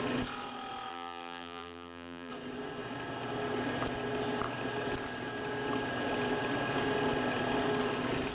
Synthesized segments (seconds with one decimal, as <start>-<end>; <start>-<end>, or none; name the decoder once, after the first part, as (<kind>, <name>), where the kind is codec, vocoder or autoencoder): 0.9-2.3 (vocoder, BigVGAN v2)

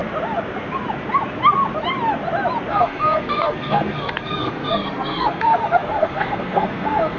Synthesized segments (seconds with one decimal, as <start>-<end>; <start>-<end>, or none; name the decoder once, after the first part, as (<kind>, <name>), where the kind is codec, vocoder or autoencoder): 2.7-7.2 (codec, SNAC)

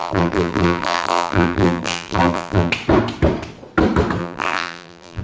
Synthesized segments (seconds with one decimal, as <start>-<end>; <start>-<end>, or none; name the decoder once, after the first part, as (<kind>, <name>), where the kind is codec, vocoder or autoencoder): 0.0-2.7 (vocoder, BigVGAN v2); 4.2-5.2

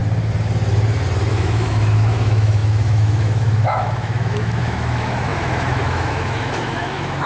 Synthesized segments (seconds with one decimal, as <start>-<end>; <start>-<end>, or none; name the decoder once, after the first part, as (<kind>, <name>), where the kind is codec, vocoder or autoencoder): 1.3-7.3 (autoencoder, DAC-VAE)